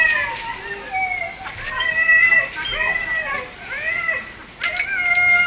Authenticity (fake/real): real